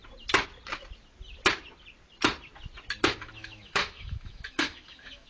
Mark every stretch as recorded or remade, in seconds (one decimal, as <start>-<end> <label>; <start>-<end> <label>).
0.0-3.2 recorded; 3.2-5.3 remade